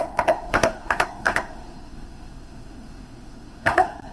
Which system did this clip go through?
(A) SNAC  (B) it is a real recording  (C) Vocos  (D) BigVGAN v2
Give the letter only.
A